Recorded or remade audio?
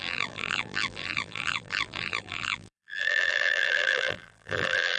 remade